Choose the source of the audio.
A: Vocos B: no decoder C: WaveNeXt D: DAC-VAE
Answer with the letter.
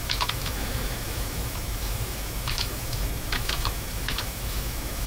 D